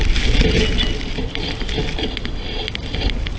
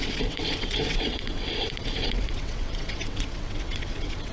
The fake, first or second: second